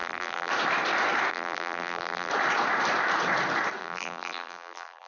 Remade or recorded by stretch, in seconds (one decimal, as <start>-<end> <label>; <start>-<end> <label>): 0.0-0.5 remade; 0.5-1.3 recorded; 1.3-2.3 remade; 2.3-3.8 recorded; 3.8-5.1 remade